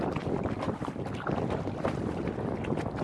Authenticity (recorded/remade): recorded